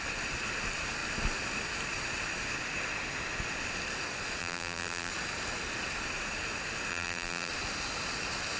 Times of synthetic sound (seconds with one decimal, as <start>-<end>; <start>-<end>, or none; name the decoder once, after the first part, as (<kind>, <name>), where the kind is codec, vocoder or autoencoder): 4.4-5.1 (vocoder, BigVGAN v2); 6.9-7.5